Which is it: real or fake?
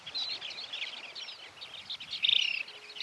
real